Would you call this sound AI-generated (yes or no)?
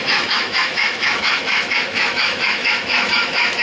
yes